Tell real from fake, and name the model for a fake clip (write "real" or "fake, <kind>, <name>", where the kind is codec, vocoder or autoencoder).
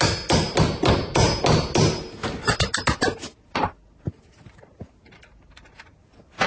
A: real